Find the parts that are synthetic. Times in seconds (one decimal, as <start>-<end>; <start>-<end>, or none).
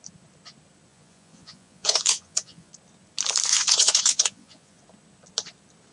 0.9-2.7; 3.5-4.8